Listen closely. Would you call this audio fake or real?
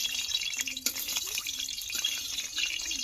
fake